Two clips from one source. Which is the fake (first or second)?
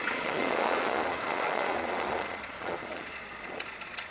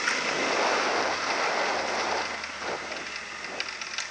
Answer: first